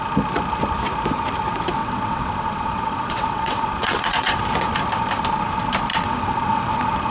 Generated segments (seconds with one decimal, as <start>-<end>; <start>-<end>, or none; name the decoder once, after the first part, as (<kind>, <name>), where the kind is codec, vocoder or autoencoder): 1.8-4.4 (vocoder, WaveNeXt); 5.9-6.6